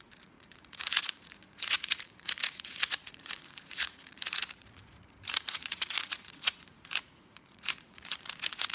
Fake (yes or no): yes